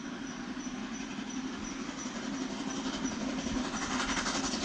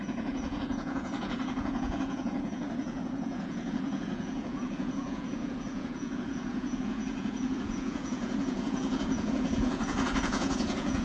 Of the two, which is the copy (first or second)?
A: second